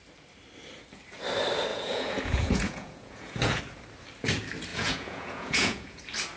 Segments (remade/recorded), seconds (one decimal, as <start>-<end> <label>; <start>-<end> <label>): 0.0-1.7 recorded; 1.7-3.6 remade; 3.6-4.7 recorded; 4.7-6.0 remade; 6.0-6.4 recorded